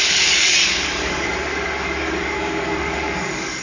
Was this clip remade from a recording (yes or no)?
yes